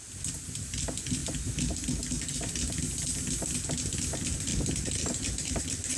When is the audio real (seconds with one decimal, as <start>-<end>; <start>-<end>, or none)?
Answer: 0.0-6.0